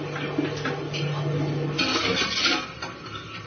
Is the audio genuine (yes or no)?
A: yes